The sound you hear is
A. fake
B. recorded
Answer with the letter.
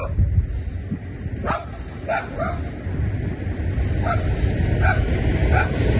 B